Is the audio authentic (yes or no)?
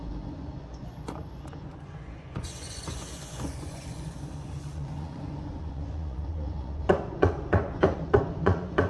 no